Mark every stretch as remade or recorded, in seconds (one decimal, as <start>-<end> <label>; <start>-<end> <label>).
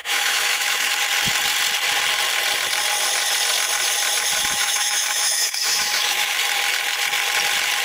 0.0-0.9 remade; 0.9-4.6 recorded; 4.6-6.3 remade; 6.3-7.8 recorded